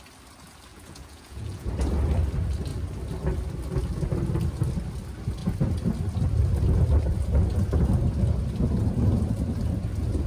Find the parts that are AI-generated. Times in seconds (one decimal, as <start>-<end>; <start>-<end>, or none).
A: 0.7-1.7